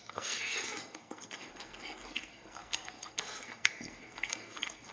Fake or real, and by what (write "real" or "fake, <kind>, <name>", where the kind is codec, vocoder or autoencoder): fake, codec, SNAC